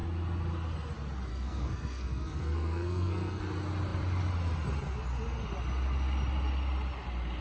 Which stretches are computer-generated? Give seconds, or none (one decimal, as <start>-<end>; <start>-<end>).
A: 1.3-3.4